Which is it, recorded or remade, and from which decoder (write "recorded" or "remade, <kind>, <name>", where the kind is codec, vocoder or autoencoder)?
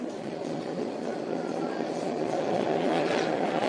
remade, vocoder, Vocos